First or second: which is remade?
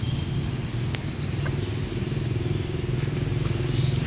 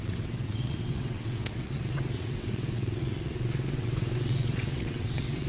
second